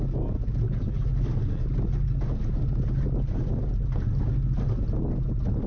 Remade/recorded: recorded